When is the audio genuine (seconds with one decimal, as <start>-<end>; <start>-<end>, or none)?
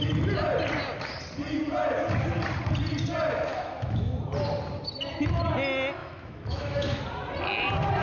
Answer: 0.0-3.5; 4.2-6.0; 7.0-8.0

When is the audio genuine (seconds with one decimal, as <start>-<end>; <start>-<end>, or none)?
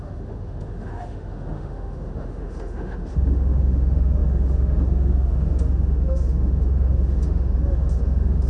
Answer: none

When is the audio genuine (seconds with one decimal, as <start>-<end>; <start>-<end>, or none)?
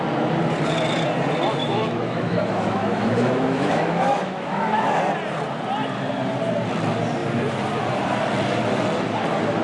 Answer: 0.0-1.6; 5.0-9.6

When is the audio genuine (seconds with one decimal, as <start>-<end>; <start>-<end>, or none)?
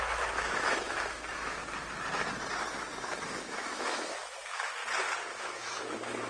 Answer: 1.6-3.0; 4.8-5.3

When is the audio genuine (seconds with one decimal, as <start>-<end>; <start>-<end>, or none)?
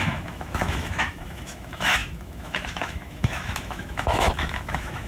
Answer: none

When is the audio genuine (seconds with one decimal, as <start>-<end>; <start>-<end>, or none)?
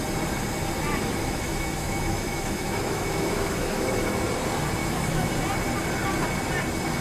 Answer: 0.0-1.2; 4.2-4.8; 5.3-7.0